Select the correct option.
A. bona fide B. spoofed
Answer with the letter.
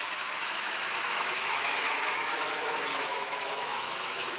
B